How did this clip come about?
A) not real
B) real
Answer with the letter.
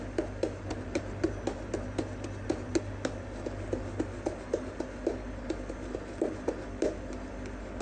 B